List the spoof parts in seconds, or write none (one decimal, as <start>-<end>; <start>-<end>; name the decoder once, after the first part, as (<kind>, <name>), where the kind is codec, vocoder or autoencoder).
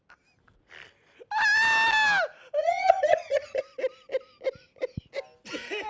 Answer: 2.6-3.6 (vocoder, HiFi-GAN)